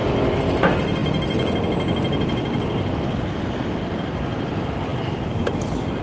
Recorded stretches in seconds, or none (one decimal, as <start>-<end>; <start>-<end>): 0.0-6.0